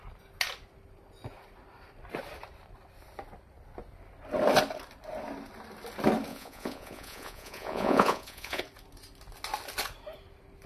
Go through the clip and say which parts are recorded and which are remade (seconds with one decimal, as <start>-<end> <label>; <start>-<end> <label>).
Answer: 0.0-6.3 recorded; 6.3-8.6 remade; 8.6-10.7 recorded